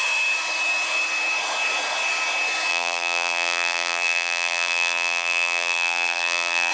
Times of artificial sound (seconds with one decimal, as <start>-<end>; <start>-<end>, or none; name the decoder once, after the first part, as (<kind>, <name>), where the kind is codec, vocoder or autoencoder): 2.7-6.7 (vocoder, BigVGAN v2)